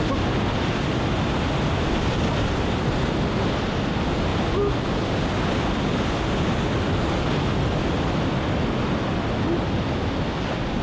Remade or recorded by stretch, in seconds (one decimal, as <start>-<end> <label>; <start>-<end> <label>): 0.0-10.8 recorded